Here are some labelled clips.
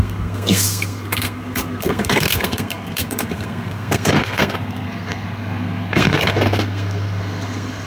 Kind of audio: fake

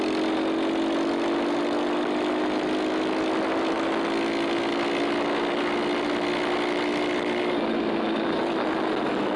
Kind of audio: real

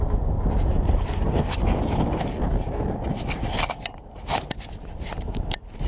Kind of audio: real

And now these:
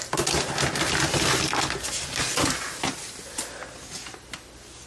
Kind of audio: real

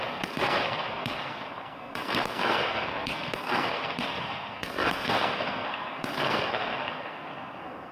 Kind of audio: fake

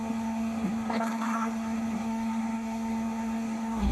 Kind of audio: fake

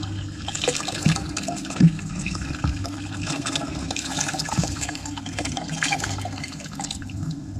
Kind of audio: fake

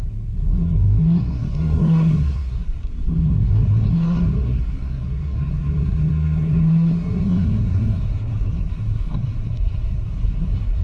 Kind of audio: fake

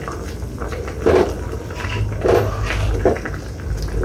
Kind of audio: real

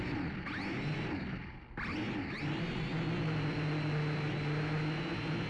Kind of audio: real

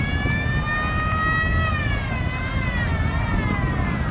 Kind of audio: real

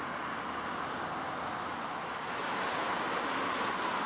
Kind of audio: real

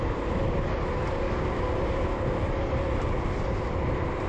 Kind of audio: real